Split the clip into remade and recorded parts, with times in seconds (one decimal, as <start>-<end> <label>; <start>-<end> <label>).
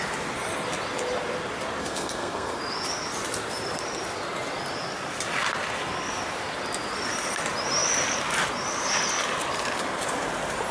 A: 0.0-1.8 recorded; 1.8-2.6 remade; 2.6-10.7 recorded